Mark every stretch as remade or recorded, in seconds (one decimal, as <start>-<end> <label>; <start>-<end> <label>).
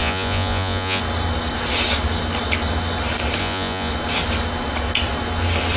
0.0-1.0 remade; 1.0-3.4 recorded; 3.4-3.9 remade; 3.9-5.8 recorded